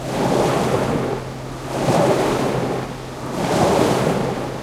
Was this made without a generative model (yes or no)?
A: yes